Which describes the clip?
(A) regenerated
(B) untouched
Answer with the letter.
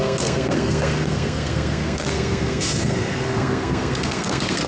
A